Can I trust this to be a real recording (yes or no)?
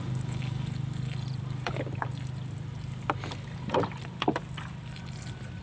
no